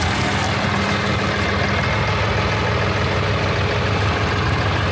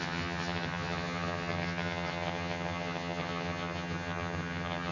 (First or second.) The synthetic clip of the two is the second